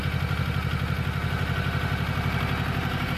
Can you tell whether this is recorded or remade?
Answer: recorded